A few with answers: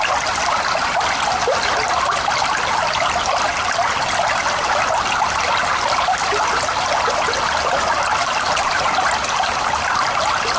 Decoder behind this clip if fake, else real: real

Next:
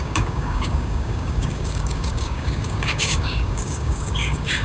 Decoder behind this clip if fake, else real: fake, codec, DAC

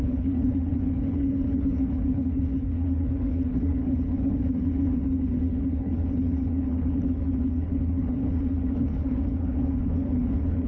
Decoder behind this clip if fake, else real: fake, codec, HILCodec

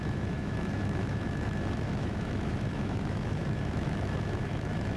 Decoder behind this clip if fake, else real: fake, autoencoder, DAC-VAE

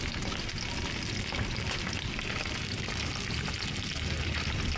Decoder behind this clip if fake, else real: real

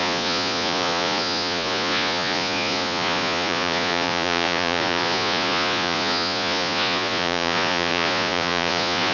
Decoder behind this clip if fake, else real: fake, vocoder, Vocos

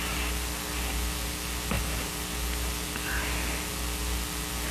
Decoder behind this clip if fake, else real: real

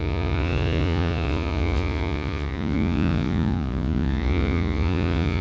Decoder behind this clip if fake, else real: fake, vocoder, Vocos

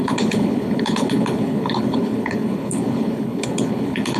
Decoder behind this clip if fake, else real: fake, codec, HILCodec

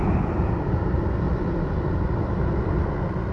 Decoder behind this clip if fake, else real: real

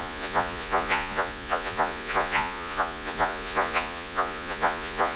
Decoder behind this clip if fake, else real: fake, vocoder, Vocos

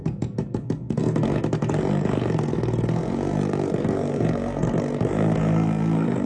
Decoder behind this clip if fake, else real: fake, codec, SNAC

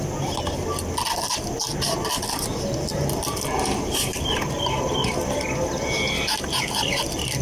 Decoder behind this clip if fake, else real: real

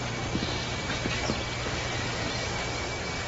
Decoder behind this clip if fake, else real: real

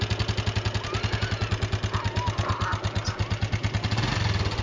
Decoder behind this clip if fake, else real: real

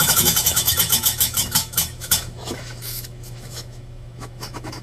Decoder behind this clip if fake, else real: fake, autoencoder, DAC-VAE